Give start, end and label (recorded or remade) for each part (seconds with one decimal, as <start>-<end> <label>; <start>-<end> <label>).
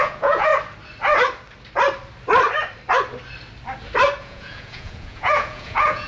0.0-0.5 remade; 0.5-4.2 recorded; 4.2-6.1 remade